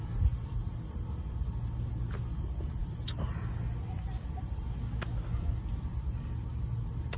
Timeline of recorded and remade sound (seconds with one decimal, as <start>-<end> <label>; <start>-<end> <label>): 0.0-7.2 recorded